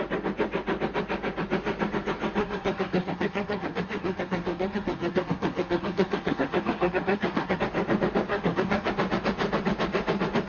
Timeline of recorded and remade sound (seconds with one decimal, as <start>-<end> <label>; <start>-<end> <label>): 0.0-2.4 recorded; 2.4-7.6 remade; 7.6-8.3 recorded; 8.3-8.9 remade; 8.9-10.5 recorded